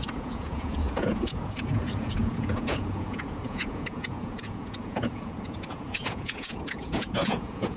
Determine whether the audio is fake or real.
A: fake